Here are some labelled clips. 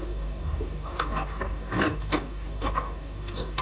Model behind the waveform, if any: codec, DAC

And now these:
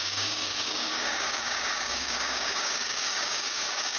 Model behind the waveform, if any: codec, DAC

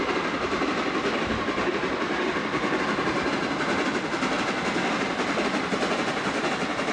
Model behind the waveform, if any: none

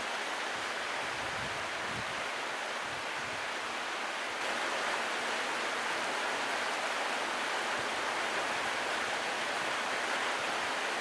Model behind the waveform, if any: none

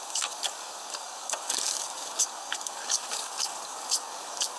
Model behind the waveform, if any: codec, DAC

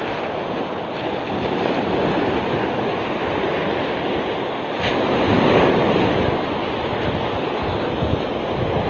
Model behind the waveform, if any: none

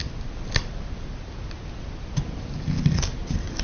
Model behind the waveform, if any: none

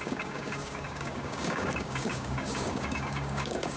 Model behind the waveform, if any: codec, DAC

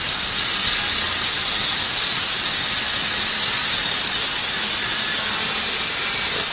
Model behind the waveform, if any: none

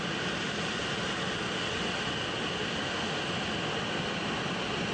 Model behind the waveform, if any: none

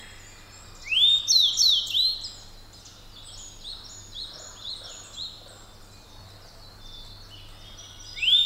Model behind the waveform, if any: none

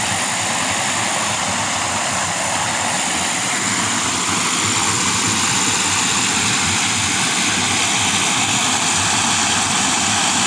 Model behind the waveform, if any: none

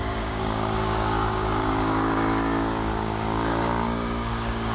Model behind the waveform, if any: codec, DAC